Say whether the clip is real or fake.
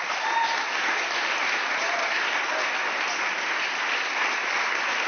real